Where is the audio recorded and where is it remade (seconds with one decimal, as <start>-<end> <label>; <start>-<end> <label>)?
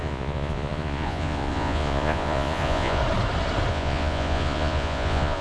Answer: 0.0-3.0 remade; 3.0-3.7 recorded; 3.7-5.4 remade